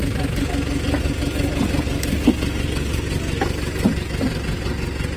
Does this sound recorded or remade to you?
recorded